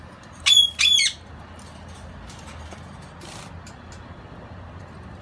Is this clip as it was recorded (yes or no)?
yes